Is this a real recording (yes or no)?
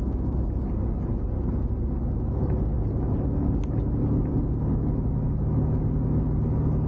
yes